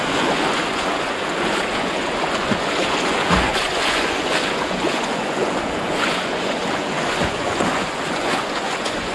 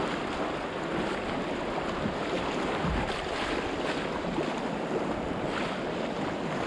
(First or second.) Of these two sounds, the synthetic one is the first